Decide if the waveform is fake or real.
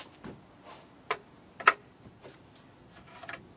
real